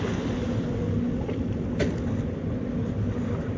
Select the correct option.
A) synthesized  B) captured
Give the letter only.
B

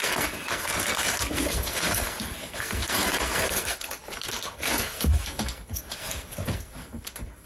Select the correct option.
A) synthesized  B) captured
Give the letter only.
A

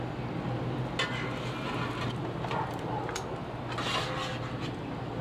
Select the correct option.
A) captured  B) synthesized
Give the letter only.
A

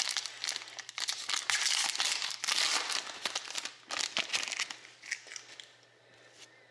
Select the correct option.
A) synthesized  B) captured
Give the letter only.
B